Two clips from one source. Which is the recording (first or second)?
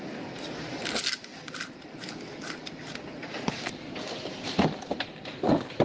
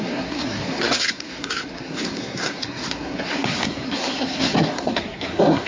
first